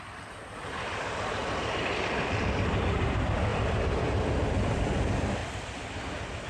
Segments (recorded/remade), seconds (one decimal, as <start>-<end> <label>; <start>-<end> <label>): 0.0-1.4 recorded; 1.4-2.4 remade; 2.4-3.5 recorded; 3.5-4.7 remade; 4.7-5.4 recorded; 5.4-6.0 remade; 6.0-6.5 recorded

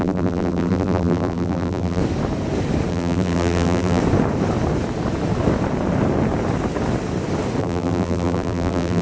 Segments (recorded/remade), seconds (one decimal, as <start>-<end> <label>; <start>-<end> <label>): 0.0-2.0 remade; 2.0-2.9 recorded; 2.9-4.0 remade; 4.0-7.6 recorded; 7.6-9.0 remade

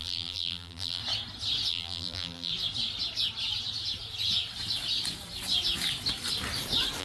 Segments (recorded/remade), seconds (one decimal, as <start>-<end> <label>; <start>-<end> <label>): 0.0-1.0 remade; 1.0-1.7 recorded; 1.7-2.5 remade; 2.5-7.0 recorded

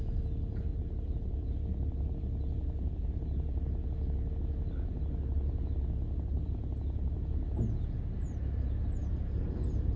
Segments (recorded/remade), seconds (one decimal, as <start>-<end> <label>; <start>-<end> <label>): 0.0-0.7 recorded; 0.7-1.6 remade; 1.6-10.0 recorded

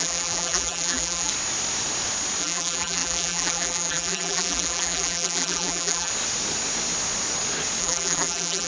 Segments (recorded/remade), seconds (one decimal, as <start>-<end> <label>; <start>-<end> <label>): 0.0-1.3 remade; 1.3-2.4 recorded; 2.4-6.1 remade; 6.1-7.8 recorded; 7.8-8.7 remade